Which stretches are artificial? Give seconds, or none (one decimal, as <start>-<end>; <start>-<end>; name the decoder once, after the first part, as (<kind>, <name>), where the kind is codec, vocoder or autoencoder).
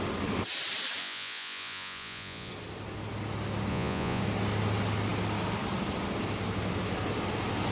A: 1.0-2.5 (vocoder, Vocos); 3.7-4.2